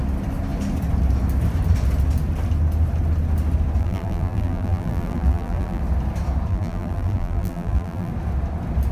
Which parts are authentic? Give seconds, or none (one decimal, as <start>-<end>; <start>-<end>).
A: 0.0-3.8; 5.8-6.5; 8.1-8.9